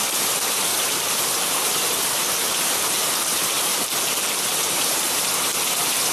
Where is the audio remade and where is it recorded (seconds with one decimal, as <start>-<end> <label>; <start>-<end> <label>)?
0.0-3.7 remade; 3.7-4.4 recorded; 4.4-6.1 remade